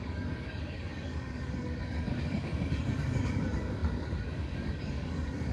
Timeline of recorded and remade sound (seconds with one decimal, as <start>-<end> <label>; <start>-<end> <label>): 0.0-5.5 remade